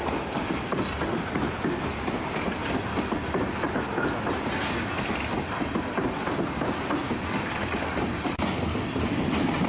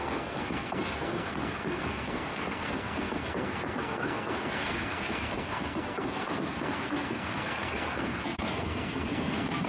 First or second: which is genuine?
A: first